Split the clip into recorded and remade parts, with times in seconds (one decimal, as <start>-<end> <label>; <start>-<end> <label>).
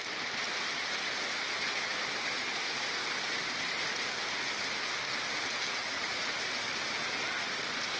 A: 0.0-5.8 recorded; 5.8-6.4 remade; 6.4-8.0 recorded